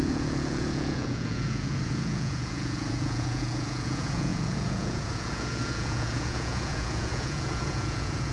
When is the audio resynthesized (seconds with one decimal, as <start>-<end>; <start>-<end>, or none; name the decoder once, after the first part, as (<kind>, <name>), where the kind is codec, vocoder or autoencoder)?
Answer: 0.0-8.3 (vocoder, Vocos)